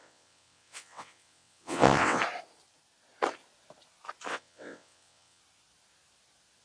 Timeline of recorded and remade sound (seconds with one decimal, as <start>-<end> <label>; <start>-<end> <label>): 0.0-2.2 remade; 2.2-4.3 recorded; 4.3-5.4 remade; 5.4-6.6 recorded